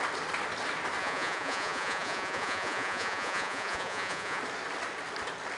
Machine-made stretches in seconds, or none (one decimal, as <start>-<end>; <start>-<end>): 1.0-4.4